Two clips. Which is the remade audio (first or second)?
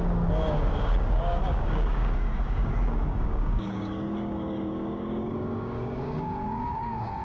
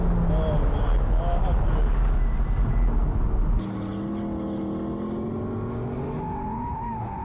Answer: first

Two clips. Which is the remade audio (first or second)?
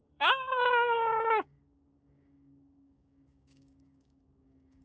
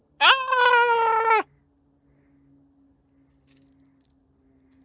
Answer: first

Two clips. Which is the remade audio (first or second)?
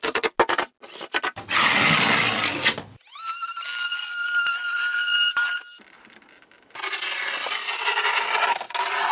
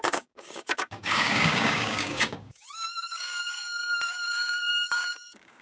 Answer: second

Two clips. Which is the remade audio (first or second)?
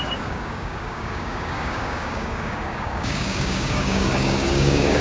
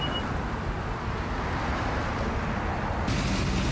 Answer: first